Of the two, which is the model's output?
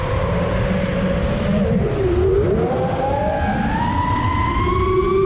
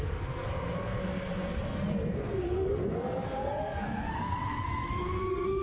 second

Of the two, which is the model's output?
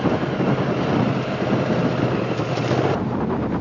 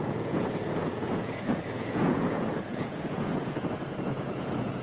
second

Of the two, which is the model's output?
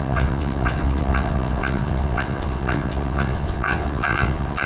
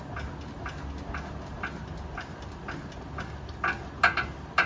first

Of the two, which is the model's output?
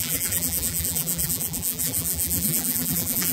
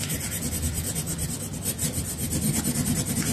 first